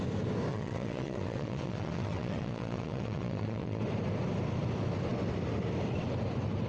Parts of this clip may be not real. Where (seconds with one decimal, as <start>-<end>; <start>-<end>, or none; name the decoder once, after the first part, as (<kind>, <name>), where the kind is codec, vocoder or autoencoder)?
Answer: 0.5-3.8 (vocoder, WaveNeXt)